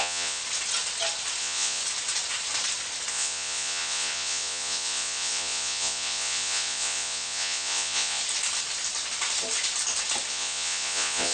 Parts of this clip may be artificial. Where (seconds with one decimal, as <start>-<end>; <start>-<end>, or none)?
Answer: 0.0-0.4; 1.4-1.8; 3.1-8.2; 10.3-11.3